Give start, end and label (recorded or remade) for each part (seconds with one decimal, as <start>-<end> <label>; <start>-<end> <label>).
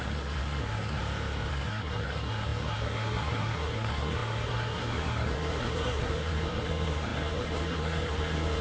0.0-1.0 remade; 1.0-1.5 recorded; 1.5-8.6 remade